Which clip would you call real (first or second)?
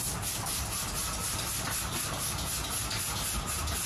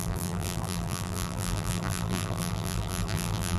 first